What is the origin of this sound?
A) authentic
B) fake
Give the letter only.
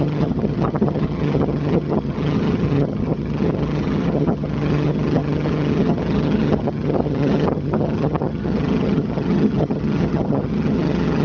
B